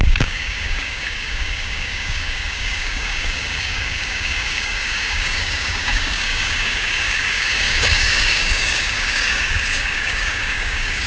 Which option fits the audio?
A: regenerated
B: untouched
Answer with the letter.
A